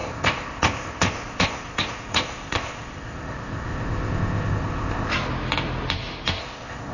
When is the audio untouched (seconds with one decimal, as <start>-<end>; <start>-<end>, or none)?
5.1-6.4